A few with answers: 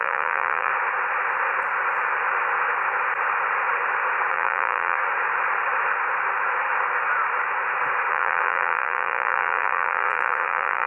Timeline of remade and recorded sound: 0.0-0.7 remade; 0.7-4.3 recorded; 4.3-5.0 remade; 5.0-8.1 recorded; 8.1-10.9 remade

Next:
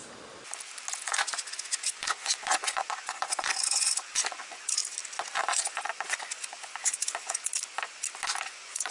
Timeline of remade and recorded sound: 0.0-1.0 recorded; 1.0-4.8 remade; 4.8-5.4 recorded; 5.4-7.5 remade; 7.5-8.5 recorded; 8.5-8.9 remade

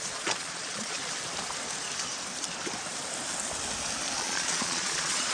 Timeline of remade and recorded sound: 0.0-1.0 remade; 1.0-4.2 recorded; 4.2-5.3 remade